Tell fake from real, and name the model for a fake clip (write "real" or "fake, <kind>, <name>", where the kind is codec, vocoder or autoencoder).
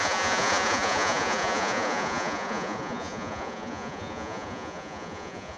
fake, vocoder, Vocos